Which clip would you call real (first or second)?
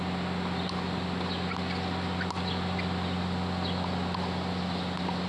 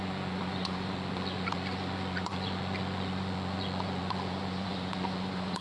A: first